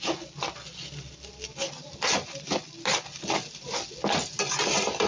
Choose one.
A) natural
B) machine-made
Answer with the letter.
A